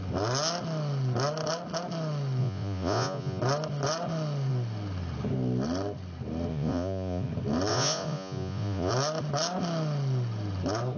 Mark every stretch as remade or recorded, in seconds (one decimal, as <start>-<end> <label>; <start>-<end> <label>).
0.0-2.4 recorded; 2.4-3.4 remade; 3.4-6.5 recorded; 6.5-7.3 remade; 7.3-7.7 recorded; 7.7-8.9 remade; 8.9-11.0 recorded